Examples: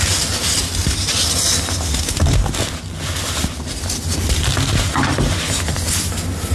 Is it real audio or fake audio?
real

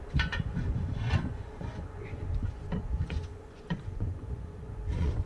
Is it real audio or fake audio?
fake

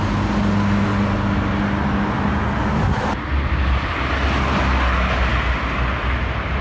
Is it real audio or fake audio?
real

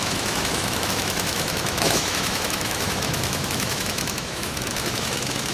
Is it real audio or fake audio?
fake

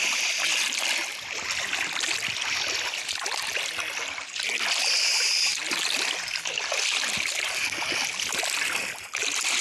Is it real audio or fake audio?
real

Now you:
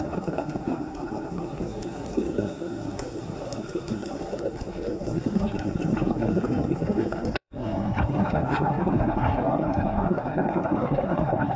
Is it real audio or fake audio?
fake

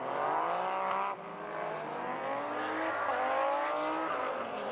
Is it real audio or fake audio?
real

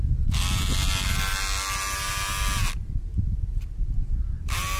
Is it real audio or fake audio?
real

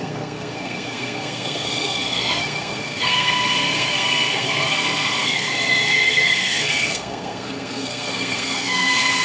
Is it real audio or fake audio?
fake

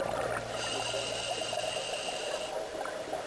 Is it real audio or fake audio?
real